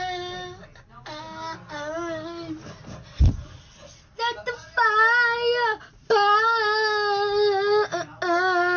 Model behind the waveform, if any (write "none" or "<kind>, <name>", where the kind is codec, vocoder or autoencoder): none